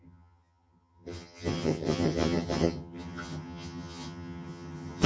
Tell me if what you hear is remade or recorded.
remade